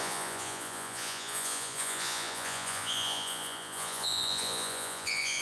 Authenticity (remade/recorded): remade